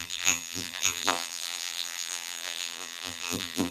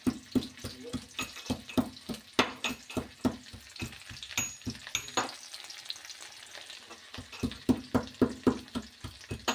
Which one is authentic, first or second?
second